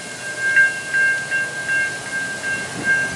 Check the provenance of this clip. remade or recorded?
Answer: recorded